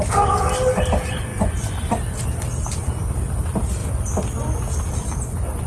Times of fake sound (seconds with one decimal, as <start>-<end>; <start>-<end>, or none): 1.3-1.9

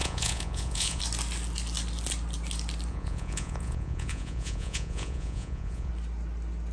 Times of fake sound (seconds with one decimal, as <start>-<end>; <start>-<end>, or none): 0.0-1.0; 2.9-5.9

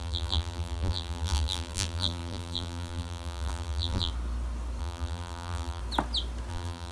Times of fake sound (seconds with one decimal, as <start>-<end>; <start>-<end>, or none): 0.0-4.1; 4.8-5.8; 6.5-6.9